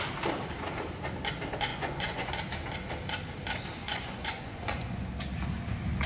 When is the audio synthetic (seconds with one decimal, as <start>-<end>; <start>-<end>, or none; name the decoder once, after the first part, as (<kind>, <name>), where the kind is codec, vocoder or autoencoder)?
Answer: 1.7-2.3 (vocoder, Vocos); 3.8-5.1